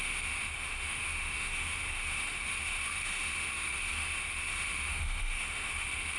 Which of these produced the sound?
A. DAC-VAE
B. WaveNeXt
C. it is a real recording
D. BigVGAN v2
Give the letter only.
A